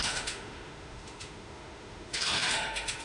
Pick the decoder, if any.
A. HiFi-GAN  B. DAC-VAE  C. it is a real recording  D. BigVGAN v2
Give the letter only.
B